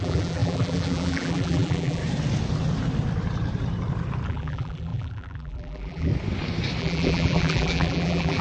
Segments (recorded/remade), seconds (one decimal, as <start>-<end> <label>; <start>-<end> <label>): 0.0-2.0 remade; 2.0-4.3 recorded; 4.3-6.1 remade; 6.1-6.8 recorded; 6.8-8.4 remade